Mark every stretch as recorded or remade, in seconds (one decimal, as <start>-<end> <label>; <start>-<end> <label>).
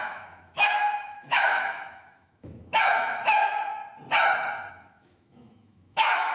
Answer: 0.0-3.8 remade; 3.8-4.7 recorded; 4.7-6.3 remade